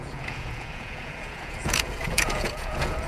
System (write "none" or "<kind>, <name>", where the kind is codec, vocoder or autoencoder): vocoder, Vocos